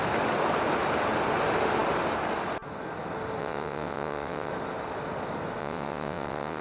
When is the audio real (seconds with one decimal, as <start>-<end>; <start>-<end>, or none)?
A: 0.0-3.4; 4.5-5.6

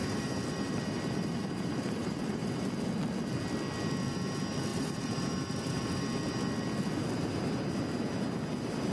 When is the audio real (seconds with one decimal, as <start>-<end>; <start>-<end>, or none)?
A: 2.6-4.7; 6.0-8.9

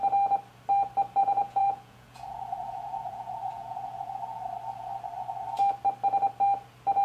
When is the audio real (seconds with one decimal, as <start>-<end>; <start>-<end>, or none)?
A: 0.0-1.2; 4.2-7.0

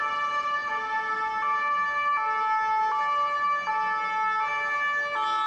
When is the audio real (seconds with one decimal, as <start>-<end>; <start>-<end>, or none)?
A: 0.0-5.5

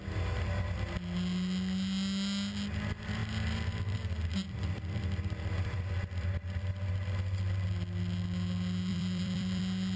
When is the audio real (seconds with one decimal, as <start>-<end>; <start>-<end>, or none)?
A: 0.0-3.2; 5.9-8.9; 9.6-10.0